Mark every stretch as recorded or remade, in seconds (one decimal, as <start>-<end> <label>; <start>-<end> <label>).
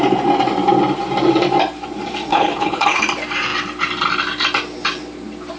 0.0-2.3 recorded; 2.3-3.0 remade; 3.0-5.6 recorded